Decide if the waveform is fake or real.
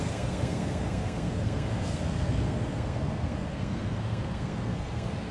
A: fake